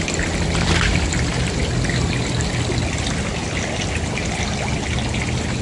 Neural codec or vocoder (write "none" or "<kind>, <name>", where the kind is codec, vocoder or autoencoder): none